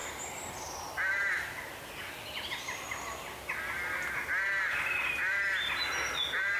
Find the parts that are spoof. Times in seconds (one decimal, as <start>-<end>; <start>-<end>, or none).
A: 0.0-1.3; 5.2-6.1